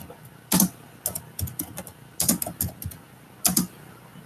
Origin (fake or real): real